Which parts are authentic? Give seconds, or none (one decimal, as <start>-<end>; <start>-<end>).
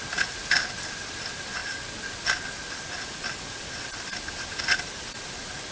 0.0-5.7